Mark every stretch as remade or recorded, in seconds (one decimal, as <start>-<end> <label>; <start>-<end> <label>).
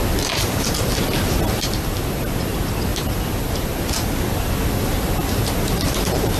0.0-6.4 recorded